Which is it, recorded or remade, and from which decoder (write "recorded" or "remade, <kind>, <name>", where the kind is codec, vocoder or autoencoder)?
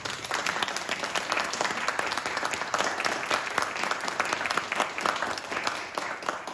recorded